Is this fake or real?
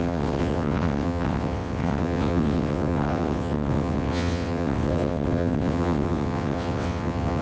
fake